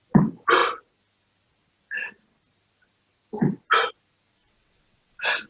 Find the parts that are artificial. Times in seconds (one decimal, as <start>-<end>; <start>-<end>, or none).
4.4-5.5